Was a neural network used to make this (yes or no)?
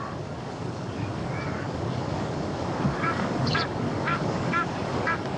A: yes